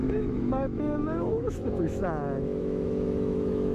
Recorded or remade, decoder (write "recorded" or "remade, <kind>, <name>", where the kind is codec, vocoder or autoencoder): remade, autoencoder, DAC-VAE